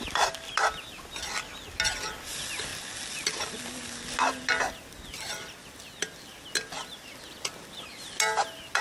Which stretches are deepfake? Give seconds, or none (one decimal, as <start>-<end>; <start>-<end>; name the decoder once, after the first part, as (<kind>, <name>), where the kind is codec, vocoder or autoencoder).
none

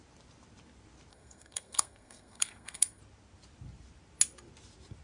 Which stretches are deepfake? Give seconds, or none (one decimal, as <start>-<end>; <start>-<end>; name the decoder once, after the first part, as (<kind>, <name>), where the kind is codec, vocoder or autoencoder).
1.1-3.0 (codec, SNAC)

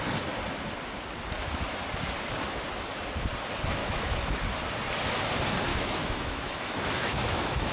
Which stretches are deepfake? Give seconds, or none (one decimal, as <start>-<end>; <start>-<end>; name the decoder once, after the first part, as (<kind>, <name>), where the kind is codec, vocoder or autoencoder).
3.8-4.4 (autoencoder, DAC-VAE); 5.7-7.7